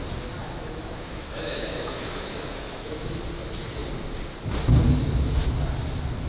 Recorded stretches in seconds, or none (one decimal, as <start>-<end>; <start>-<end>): 0.0-0.4; 3.2-6.3